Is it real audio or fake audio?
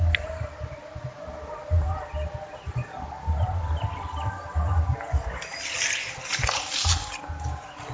real